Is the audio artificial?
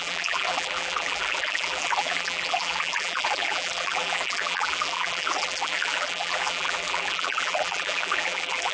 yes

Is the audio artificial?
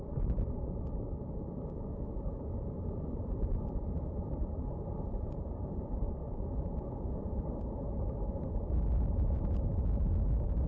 yes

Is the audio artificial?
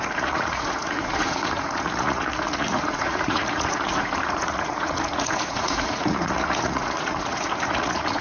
yes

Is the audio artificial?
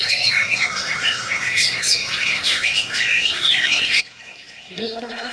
yes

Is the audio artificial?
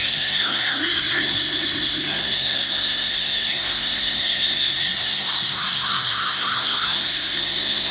yes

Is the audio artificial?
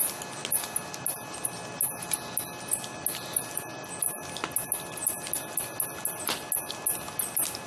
no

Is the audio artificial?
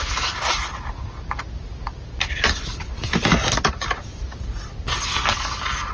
no